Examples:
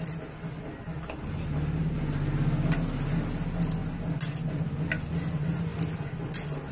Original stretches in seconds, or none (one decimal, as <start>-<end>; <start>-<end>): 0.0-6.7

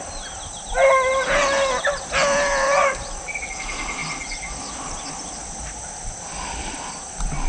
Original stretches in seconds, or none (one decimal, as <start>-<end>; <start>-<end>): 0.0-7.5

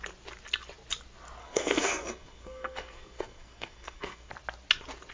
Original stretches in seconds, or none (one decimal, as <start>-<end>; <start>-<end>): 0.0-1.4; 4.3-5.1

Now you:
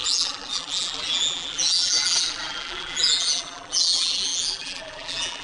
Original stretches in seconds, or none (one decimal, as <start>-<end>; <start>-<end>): none

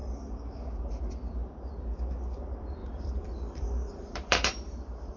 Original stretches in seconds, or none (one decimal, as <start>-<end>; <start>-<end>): 0.0-2.8

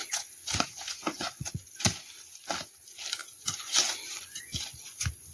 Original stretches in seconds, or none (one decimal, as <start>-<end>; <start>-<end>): 1.7-3.2